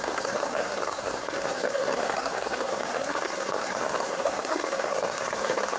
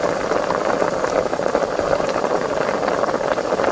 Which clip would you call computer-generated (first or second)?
first